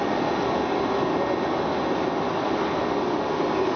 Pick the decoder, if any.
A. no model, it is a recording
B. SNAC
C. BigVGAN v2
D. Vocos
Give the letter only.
A